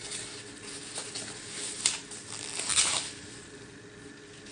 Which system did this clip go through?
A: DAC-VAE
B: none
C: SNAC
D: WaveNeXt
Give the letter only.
B